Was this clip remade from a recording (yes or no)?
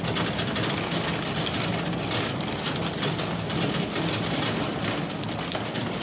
no